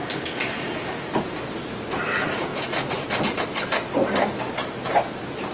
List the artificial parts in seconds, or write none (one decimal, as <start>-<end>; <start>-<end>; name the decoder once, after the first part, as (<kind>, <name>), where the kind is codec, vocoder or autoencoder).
none